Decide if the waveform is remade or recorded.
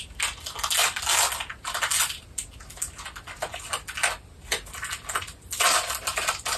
recorded